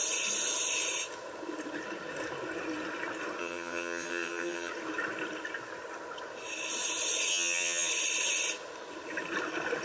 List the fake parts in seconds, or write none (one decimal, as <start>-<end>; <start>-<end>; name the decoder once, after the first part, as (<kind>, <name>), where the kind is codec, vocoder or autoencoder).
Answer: 3.4-4.7 (vocoder, HiFi-GAN); 7.3-7.9